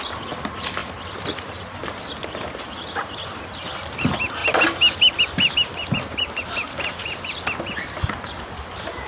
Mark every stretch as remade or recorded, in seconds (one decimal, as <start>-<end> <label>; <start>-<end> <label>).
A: 0.0-9.1 recorded